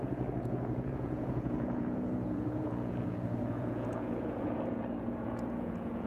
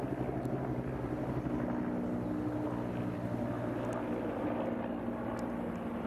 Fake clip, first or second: first